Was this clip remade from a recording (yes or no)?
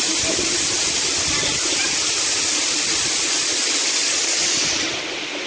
no